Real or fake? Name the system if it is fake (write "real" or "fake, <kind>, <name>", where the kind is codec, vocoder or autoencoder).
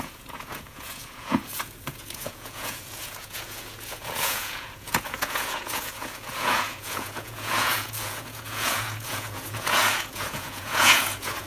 fake, vocoder, Vocos